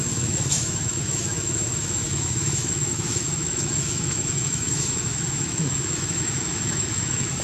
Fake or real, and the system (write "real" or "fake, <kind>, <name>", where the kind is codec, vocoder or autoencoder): fake, autoencoder, DAC-VAE